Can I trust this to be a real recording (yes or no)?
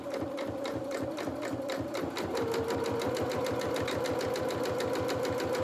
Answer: yes